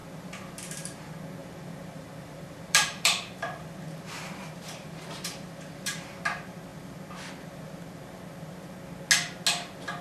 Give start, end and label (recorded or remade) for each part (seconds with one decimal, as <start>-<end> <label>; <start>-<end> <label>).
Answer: 0.0-1.4 recorded; 1.4-6.1 remade; 6.1-10.0 recorded